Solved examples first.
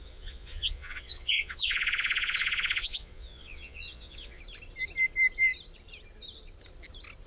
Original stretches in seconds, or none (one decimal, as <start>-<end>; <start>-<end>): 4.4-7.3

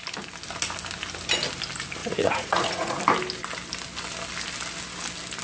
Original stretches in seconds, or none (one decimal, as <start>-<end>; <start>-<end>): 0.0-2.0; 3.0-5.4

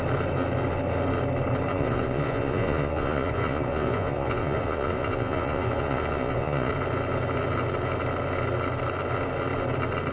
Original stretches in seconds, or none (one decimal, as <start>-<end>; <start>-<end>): 0.0-1.7; 6.7-10.1